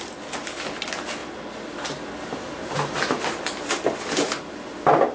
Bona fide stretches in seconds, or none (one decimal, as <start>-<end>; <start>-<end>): 0.0-5.1